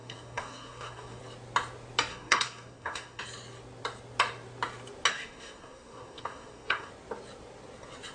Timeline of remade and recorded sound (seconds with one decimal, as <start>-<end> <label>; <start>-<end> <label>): 0.0-1.2 remade; 1.2-2.1 recorded; 2.1-3.2 remade; 3.2-5.1 recorded; 5.1-6.9 remade; 6.9-8.1 recorded